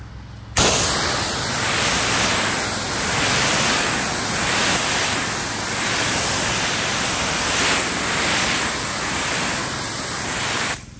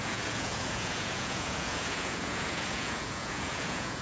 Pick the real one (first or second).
first